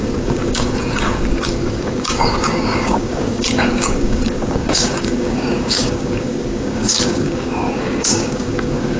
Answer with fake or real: fake